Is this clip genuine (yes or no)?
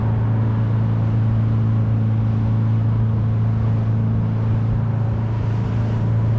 yes